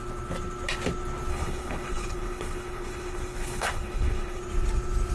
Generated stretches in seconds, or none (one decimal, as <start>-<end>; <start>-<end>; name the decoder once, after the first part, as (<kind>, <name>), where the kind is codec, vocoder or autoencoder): 1.3-4.4 (codec, HILCodec)